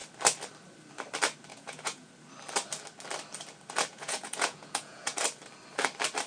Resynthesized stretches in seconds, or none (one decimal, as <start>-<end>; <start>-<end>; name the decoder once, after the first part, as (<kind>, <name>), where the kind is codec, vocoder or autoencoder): 1.5-2.1 (vocoder, Vocos); 3.9-5.2